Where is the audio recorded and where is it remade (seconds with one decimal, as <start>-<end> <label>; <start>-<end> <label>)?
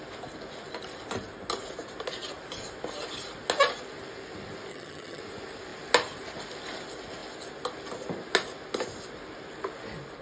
0.0-4.7 recorded; 4.7-5.2 remade; 5.2-10.2 recorded